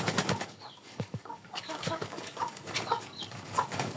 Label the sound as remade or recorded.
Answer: remade